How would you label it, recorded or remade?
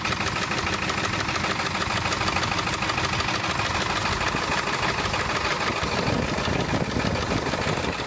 recorded